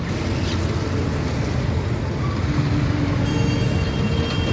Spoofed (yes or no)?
no